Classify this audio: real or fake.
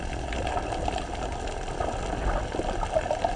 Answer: real